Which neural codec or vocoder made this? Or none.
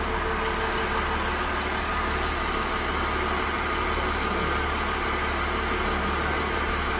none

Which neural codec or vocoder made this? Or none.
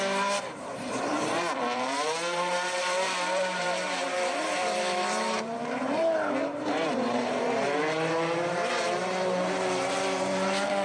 vocoder, BigVGAN v2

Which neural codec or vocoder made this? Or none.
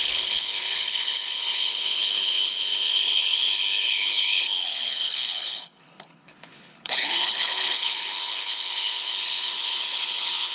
codec, HILCodec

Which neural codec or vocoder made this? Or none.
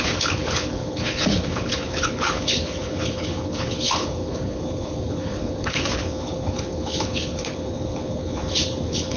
codec, HILCodec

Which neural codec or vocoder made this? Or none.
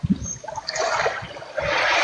none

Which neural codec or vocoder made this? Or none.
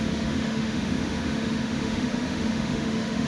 autoencoder, DAC-VAE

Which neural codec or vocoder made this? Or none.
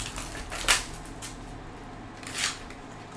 vocoder, BigVGAN v2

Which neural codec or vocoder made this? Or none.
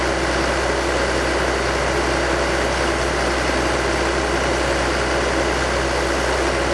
none